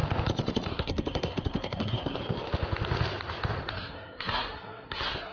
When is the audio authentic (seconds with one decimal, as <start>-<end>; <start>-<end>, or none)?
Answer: 0.0-0.7; 2.2-3.7